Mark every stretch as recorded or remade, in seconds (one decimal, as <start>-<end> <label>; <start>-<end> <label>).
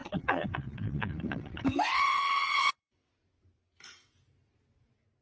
0.0-3.1 remade; 3.1-5.2 recorded